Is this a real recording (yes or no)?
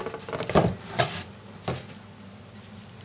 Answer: yes